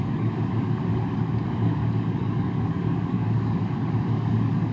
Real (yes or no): no